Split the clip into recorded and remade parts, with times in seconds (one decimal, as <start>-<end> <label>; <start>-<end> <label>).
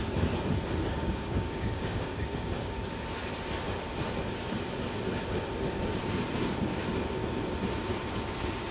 0.0-0.9 recorded; 0.9-2.8 remade; 2.8-8.7 recorded